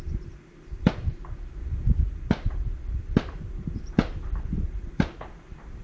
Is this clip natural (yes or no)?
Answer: yes